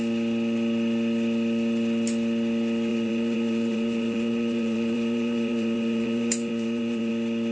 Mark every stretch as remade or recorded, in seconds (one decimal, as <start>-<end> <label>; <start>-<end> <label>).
0.0-2.9 recorded; 2.9-7.1 remade; 7.1-7.5 recorded